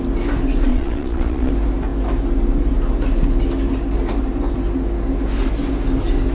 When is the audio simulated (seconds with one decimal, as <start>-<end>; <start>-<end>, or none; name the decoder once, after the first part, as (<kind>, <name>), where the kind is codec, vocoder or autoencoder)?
0.7-1.5 (vocoder, Vocos)